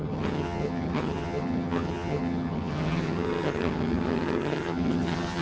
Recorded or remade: remade